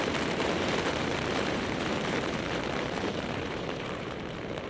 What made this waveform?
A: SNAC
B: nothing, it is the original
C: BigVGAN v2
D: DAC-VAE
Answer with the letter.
C